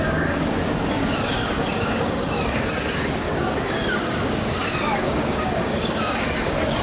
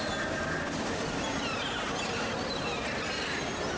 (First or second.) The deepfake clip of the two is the first